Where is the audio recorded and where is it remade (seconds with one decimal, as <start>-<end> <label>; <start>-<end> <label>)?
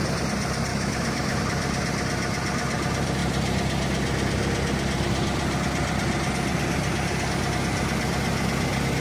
0.0-0.7 recorded; 0.7-1.4 remade; 1.4-9.0 recorded